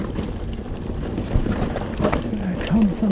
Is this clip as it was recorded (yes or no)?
yes